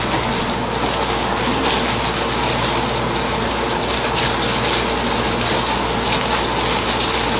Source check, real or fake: real